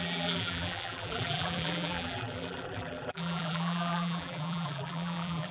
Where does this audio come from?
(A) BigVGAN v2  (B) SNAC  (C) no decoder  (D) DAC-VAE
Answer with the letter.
A